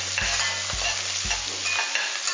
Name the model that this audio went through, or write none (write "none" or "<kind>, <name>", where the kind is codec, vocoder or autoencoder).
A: none